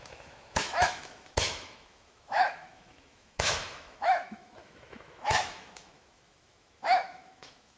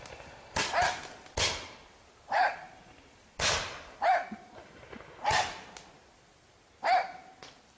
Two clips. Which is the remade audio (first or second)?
first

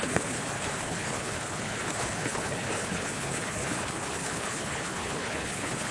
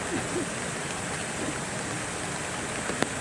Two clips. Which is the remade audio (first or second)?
first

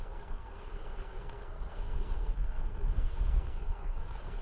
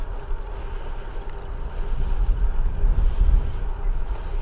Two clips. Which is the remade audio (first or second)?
first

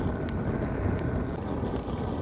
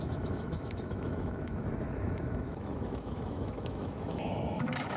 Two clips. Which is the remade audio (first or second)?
second